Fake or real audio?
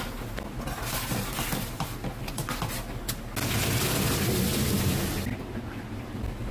real